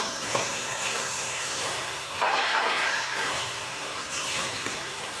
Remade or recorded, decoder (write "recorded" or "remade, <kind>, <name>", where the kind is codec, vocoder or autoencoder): remade, codec, SNAC